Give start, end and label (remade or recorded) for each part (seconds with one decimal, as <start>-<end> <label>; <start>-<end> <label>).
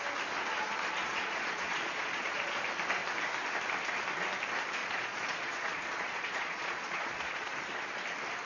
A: 0.0-1.0 recorded; 1.0-2.6 remade; 2.6-4.8 recorded; 4.8-7.5 remade; 7.5-8.5 recorded